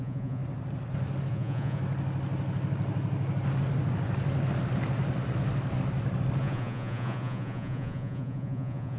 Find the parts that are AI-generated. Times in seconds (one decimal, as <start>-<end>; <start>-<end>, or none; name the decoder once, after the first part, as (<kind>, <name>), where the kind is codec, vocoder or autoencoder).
0.0-0.4 (vocoder, Vocos); 1.3-1.8; 6.4-9.0